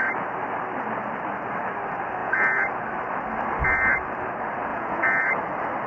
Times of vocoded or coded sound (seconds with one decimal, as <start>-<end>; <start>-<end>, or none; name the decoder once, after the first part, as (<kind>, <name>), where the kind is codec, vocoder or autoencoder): 2.2-2.7 (vocoder, Vocos); 4.7-5.2